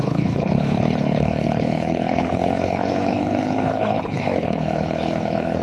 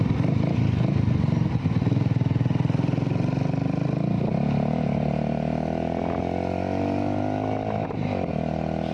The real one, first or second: second